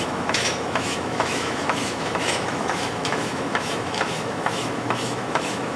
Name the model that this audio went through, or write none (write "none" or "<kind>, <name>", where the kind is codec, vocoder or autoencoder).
autoencoder, DAC-VAE